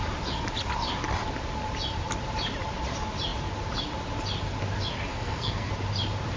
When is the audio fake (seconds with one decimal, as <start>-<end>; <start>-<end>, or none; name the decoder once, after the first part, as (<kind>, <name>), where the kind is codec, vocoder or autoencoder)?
5.1-5.7 (codec, SNAC)